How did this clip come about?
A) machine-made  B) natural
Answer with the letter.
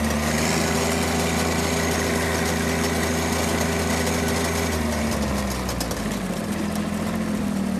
B